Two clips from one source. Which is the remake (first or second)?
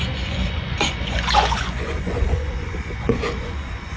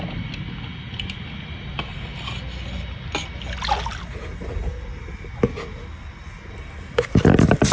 first